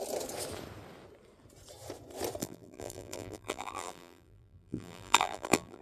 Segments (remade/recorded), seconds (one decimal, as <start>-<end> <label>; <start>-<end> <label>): 0.0-2.4 recorded; 2.4-5.8 remade